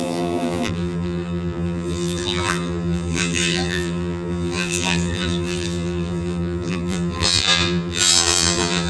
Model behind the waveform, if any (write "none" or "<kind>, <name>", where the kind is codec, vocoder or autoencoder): vocoder, BigVGAN v2